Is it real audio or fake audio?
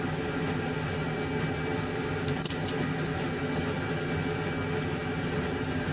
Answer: real